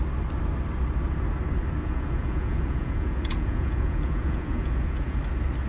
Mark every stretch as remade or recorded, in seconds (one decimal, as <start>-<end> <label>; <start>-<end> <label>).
0.0-1.8 recorded; 1.8-5.2 remade; 5.2-5.7 recorded